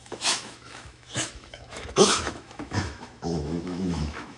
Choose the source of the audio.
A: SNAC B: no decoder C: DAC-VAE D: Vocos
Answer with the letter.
C